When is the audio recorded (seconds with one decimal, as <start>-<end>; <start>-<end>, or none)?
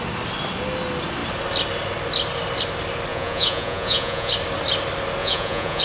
0.0-3.1; 4.3-5.2